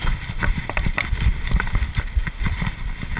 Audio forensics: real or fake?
fake